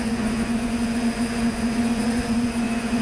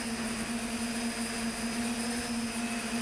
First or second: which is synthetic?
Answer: first